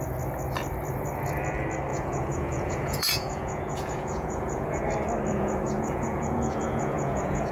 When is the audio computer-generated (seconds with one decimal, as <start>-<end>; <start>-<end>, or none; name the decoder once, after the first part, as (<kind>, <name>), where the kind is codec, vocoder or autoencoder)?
1.9-4.8 (vocoder, Vocos); 5.3-7.5

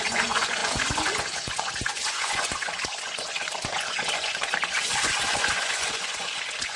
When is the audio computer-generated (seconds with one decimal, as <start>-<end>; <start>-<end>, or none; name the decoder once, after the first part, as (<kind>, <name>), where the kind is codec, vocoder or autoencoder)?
0.0-6.8 (vocoder, Vocos)

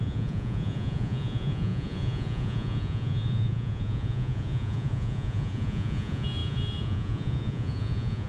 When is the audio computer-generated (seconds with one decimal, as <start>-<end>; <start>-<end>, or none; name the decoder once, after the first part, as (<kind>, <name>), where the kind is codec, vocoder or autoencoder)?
0.0-8.3 (vocoder, Vocos)

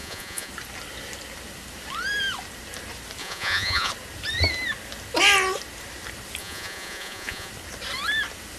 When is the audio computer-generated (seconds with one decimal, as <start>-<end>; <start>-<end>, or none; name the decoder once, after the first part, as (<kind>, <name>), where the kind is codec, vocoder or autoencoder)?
0.0-0.5 (vocoder, Vocos); 3.2-3.9; 6.4-7.5

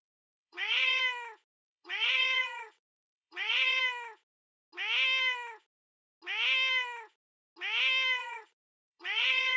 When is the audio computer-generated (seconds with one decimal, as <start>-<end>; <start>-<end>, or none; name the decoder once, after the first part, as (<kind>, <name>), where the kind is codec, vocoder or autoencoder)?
0.0-1.0 (vocoder, Vocos); 1.6-3.8; 8.2-9.6

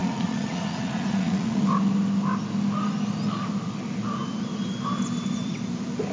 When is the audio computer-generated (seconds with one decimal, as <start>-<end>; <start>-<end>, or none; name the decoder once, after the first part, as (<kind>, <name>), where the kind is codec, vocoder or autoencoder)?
0.0-1.6 (vocoder, Vocos)